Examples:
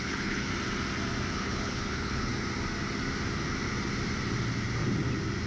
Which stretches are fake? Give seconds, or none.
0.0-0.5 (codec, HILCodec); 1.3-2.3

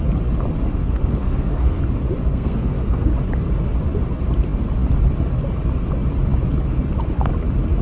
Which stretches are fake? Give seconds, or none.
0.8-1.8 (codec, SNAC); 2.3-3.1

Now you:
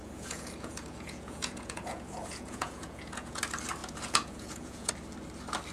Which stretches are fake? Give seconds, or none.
0.0-3.4 (vocoder, Vocos); 3.8-4.9

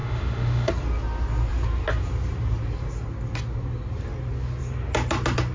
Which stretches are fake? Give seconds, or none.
0.0-0.7 (autoencoder, DAC-VAE)

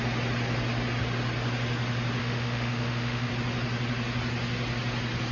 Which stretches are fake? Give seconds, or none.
2.2-3.3 (autoencoder, DAC-VAE)

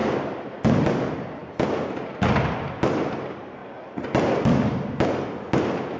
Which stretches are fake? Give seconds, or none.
none

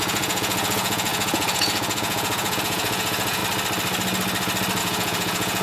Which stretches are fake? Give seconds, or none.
0.0-3.4 (vocoder, Vocos); 4.8-5.6